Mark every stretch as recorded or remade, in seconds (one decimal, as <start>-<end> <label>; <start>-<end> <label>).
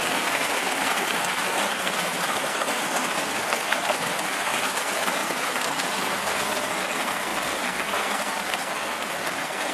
0.0-9.7 remade